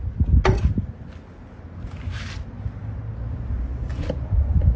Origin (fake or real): real